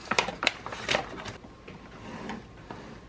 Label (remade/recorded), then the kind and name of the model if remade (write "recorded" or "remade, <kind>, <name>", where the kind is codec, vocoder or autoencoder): remade, vocoder, BigVGAN v2